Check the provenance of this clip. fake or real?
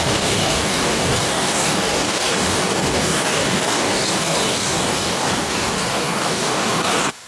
fake